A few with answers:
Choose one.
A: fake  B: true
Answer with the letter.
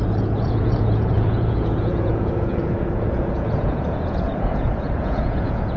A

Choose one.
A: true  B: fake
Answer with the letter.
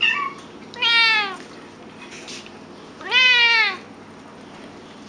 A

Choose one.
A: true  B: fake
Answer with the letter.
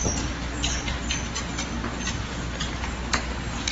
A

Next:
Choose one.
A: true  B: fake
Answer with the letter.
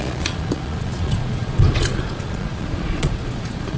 B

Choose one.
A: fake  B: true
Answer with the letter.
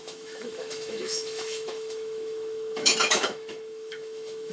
A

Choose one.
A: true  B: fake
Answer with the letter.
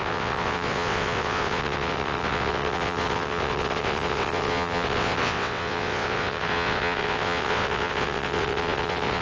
B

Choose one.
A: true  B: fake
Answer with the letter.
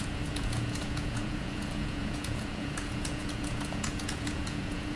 B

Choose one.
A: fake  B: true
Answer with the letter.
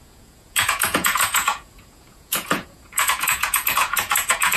A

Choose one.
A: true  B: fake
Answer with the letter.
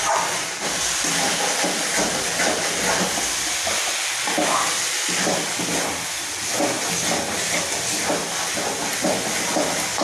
A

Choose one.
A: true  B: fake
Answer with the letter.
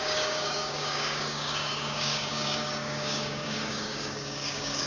B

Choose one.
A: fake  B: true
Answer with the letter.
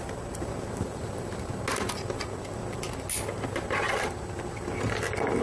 B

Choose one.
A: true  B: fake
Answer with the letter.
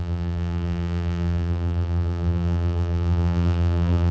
B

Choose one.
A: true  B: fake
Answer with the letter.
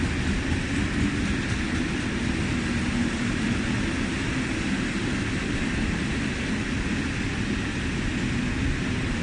A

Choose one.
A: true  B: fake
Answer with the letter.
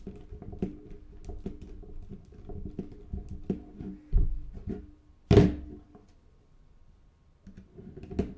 A